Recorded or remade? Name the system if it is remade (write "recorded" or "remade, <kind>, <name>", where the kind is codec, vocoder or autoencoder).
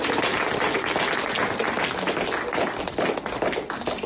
recorded